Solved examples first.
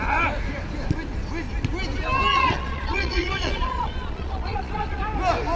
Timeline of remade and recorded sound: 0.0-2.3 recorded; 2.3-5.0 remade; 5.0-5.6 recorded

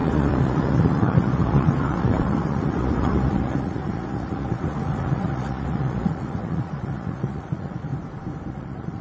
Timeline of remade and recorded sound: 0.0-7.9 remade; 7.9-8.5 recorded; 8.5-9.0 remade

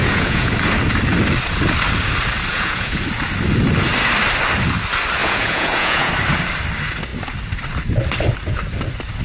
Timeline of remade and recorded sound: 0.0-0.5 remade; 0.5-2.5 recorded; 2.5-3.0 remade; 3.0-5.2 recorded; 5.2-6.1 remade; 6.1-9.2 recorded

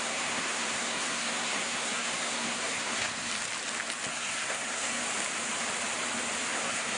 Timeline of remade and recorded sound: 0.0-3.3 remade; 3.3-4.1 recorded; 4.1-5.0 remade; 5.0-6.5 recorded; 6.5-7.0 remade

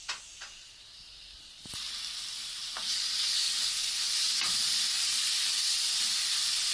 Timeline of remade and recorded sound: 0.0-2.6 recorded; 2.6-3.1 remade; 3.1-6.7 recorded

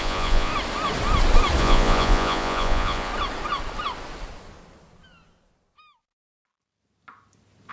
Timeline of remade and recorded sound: 0.0-0.5 remade; 0.5-1.6 recorded; 1.6-3.1 remade; 3.1-7.7 recorded